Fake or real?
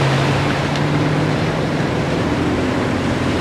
fake